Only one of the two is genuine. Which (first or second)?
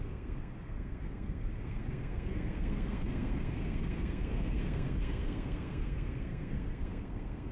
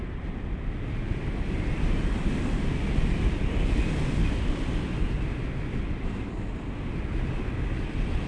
second